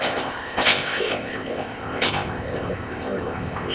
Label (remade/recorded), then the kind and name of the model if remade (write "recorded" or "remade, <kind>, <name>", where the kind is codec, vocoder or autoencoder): remade, codec, ZipCodec